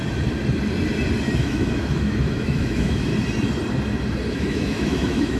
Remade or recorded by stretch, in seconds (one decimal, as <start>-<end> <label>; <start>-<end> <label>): 0.0-1.4 recorded; 1.4-3.1 remade; 3.1-4.3 recorded; 4.3-5.4 remade